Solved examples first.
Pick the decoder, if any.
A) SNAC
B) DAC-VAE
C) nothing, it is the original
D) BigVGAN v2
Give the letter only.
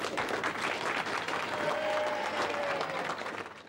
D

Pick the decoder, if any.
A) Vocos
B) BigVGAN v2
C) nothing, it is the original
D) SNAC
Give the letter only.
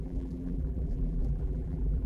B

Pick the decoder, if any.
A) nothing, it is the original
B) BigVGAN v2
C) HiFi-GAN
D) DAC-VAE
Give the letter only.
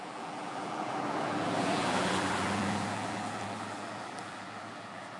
B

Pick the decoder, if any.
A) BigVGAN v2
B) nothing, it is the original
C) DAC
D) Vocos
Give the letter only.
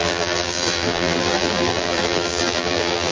A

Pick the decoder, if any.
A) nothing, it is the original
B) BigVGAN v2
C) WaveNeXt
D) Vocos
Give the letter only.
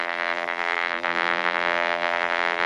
B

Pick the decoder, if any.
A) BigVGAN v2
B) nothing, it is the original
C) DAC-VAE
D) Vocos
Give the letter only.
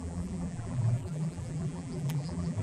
A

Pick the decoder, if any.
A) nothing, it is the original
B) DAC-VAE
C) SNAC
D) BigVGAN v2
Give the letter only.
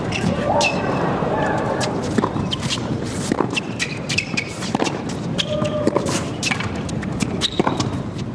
D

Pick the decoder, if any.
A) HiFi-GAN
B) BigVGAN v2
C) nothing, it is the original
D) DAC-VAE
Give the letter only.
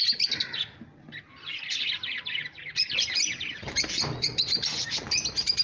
C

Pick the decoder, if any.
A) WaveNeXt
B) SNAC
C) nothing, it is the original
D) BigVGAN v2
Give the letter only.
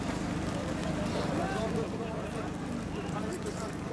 D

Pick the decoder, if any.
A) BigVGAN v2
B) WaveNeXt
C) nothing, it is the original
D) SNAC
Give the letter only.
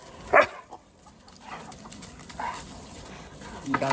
A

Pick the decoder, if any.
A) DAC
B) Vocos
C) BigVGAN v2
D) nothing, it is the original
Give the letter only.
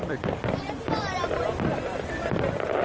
C